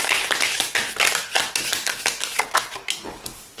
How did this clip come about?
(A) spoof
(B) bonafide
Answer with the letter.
B